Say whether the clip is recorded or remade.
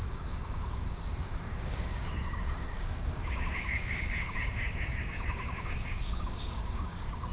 remade